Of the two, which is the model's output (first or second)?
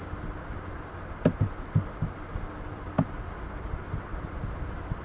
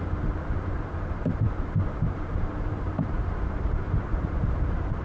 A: second